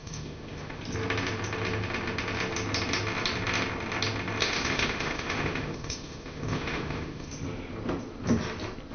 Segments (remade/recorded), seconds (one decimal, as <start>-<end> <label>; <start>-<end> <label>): 0.0-0.8 remade; 0.8-4.4 recorded; 4.4-7.3 remade; 7.3-8.9 recorded